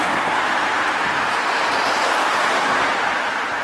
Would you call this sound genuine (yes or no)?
yes